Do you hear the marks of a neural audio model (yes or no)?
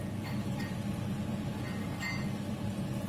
no